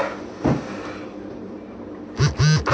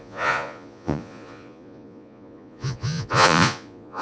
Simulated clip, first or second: second